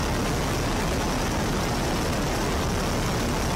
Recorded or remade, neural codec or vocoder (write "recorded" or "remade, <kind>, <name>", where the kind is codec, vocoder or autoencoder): recorded